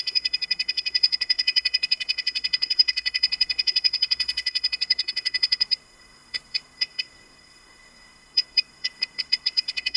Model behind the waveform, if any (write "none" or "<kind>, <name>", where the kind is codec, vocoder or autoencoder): codec, SNAC